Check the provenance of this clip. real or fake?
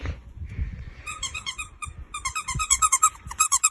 fake